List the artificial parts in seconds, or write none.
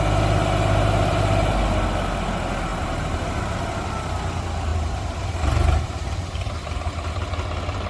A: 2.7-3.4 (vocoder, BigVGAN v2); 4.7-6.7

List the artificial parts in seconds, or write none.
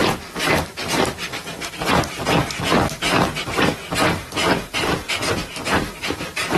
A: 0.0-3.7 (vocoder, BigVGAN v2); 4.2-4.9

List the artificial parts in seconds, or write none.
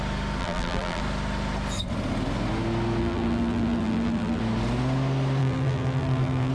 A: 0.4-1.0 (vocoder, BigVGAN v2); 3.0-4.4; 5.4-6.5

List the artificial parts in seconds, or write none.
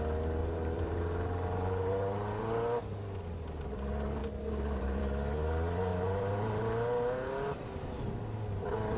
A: 0.4-2.4 (vocoder, BigVGAN v2); 4.2-5.0; 5.9-6.6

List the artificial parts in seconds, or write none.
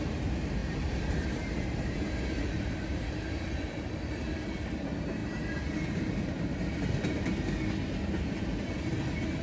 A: 0.6-3.0 (vocoder, BigVGAN v2)